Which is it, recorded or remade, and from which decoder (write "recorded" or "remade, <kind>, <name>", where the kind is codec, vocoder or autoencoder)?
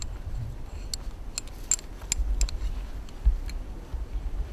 recorded